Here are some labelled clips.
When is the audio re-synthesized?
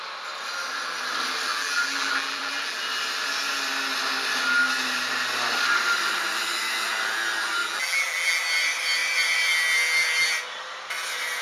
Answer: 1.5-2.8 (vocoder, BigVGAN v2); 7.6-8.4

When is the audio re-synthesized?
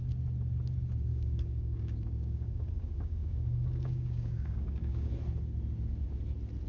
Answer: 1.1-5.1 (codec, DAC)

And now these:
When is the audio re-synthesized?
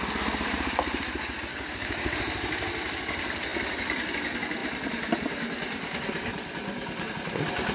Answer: 1.5-2.2 (codec, DAC)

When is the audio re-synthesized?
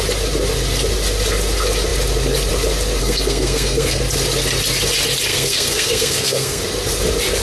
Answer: 3.0-4.0 (codec, SNAC); 5.3-6.6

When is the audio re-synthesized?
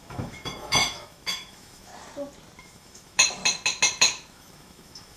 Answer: 0.0-1.9 (autoencoder, DAC-VAE); 2.6-3.4; 4.0-5.2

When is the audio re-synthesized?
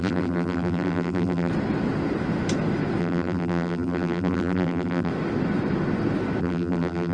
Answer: 0.0-1.5 (vocoder, BigVGAN v2); 3.0-5.1; 6.4-7.1